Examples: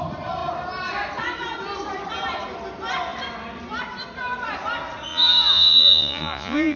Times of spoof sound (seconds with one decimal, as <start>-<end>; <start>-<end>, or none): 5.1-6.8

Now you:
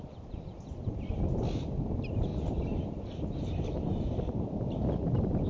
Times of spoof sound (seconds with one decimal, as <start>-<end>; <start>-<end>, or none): 2.3-3.0; 3.9-5.0

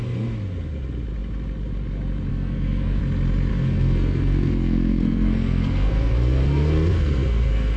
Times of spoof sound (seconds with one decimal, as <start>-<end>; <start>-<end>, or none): 2.3-3.0; 3.5-7.8

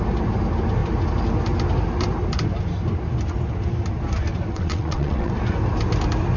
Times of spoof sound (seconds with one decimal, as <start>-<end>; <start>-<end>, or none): 4.5-5.3